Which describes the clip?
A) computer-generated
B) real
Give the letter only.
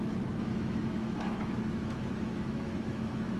A